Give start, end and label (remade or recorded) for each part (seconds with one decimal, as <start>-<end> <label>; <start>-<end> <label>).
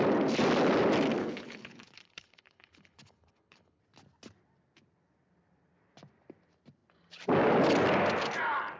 0.0-1.2 recorded; 1.2-3.8 remade; 3.8-8.8 recorded